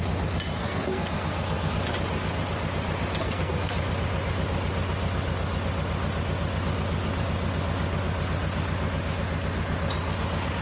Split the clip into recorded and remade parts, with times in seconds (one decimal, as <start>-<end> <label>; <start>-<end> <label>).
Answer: 0.0-0.6 recorded; 0.6-1.7 remade; 1.7-3.2 recorded; 3.2-3.7 remade; 3.7-10.6 recorded